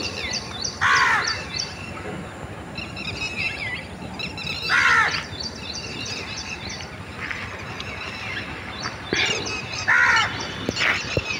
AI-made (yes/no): no